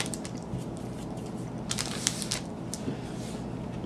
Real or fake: real